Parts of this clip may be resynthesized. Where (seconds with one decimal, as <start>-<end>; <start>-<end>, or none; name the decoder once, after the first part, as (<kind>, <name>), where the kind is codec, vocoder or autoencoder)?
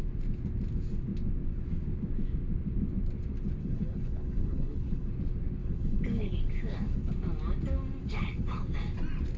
3.6-5.1 (codec, HILCodec); 5.6-7.1; 8.0-8.6